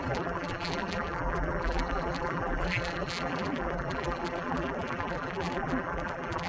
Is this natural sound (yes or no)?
no